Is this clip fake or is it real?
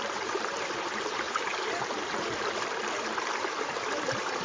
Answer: fake